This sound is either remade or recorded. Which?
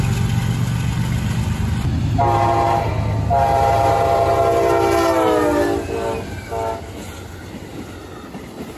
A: recorded